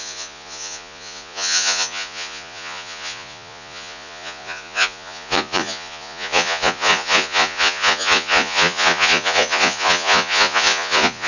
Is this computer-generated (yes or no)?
yes